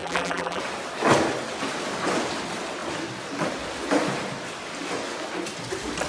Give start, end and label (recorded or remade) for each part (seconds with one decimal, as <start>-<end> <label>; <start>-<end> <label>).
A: 0.0-0.6 remade; 0.6-6.1 recorded